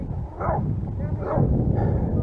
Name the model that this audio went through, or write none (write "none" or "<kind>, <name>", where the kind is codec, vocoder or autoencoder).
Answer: none